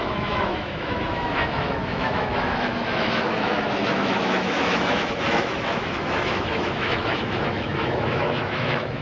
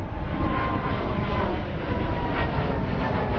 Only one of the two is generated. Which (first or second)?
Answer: first